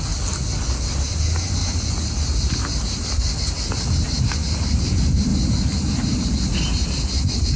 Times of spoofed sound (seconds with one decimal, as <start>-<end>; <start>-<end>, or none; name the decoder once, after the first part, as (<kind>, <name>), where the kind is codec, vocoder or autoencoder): none